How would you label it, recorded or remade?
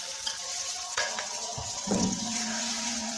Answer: remade